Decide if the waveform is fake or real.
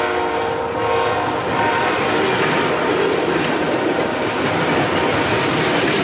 real